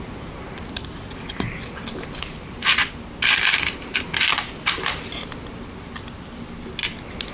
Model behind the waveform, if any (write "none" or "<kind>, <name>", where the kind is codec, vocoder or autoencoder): none